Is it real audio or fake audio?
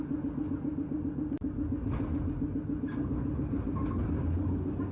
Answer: real